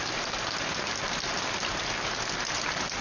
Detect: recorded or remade recorded